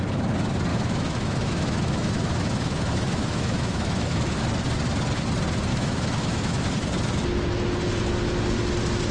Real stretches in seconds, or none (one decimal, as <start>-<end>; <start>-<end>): 0.0-0.7; 4.4-5.7; 6.7-9.1